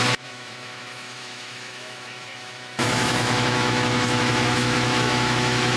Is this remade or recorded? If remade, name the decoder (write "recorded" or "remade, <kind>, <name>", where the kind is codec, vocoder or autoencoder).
remade, autoencoder, DAC-VAE